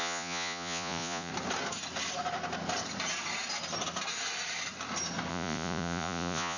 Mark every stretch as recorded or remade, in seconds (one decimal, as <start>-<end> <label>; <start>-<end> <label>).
0.0-1.3 remade; 1.3-5.3 recorded; 5.3-6.6 remade